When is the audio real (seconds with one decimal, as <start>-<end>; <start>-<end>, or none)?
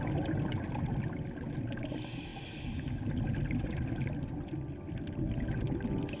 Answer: 0.0-6.2